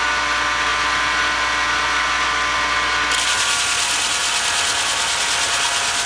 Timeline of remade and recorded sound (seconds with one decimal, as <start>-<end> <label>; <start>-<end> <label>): 0.0-6.1 recorded